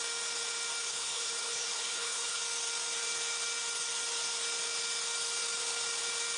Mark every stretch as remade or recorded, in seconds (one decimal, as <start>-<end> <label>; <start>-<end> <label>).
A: 0.0-0.8 recorded; 0.8-2.4 remade; 2.4-6.4 recorded